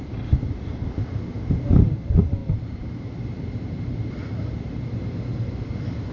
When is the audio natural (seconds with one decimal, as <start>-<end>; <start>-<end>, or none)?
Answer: 0.0-6.1